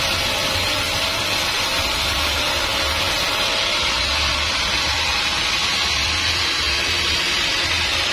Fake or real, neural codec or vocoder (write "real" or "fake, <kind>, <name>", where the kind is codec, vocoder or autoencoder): real